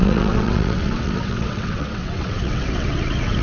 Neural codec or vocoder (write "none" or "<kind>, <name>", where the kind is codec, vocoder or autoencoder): vocoder, WaveNeXt